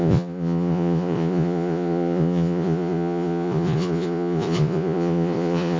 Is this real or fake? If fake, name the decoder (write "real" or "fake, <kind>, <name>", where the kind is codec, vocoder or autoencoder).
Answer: fake, vocoder, Vocos